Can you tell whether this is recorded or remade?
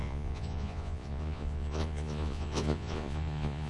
remade